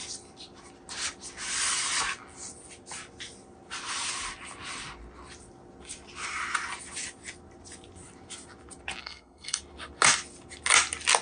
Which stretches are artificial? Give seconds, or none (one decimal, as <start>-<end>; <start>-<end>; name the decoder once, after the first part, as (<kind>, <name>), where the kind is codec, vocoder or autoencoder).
9.0-9.6 (codec, SNAC)